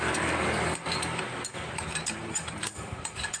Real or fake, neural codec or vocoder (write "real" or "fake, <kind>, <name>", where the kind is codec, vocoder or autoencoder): fake, vocoder, BigVGAN v2